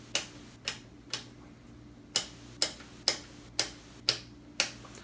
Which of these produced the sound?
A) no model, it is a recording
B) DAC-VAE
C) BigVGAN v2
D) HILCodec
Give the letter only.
A